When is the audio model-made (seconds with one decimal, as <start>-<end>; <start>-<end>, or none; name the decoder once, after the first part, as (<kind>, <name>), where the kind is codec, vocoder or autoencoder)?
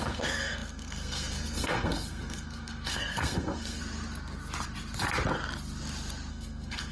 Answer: 0.0-3.8 (codec, SNAC); 6.3-6.9